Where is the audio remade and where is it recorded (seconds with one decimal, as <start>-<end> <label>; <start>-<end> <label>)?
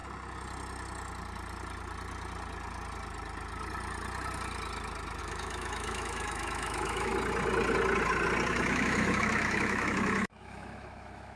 0.0-5.2 recorded; 5.2-7.1 remade; 7.1-8.5 recorded; 8.5-11.4 remade